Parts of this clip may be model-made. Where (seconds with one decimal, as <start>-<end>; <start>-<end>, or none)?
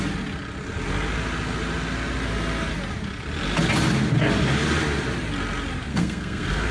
5.9-6.7